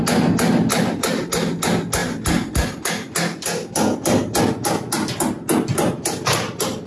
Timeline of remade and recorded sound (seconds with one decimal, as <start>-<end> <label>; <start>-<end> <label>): 0.0-0.7 recorded; 0.7-1.3 remade; 1.3-6.9 recorded